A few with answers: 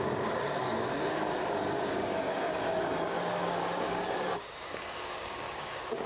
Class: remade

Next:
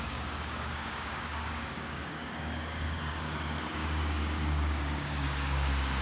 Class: remade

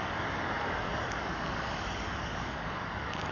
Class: remade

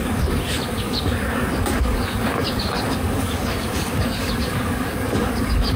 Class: remade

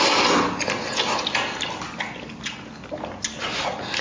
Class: recorded